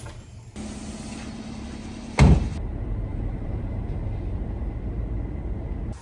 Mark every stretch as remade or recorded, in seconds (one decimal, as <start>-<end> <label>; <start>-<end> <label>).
0.0-3.1 recorded; 3.1-4.2 remade; 4.2-6.0 recorded